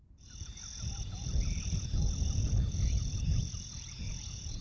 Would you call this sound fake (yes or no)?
yes